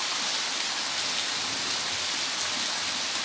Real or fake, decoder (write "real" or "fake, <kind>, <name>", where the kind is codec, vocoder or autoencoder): real